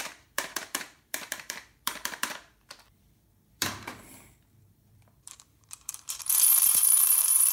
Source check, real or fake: fake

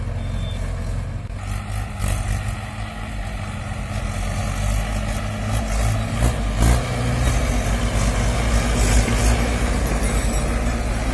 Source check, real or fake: real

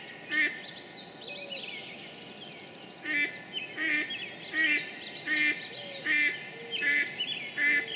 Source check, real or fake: real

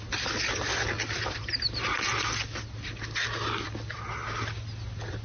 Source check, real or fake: real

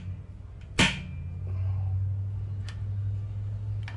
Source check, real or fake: real